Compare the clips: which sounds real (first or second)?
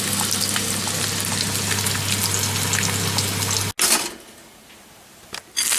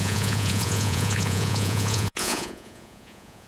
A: first